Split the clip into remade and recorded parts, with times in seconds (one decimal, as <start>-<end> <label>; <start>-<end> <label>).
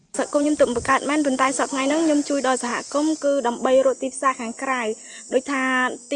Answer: 0.0-1.9 remade; 1.9-6.2 recorded